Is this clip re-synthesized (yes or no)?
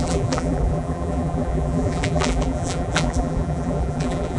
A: yes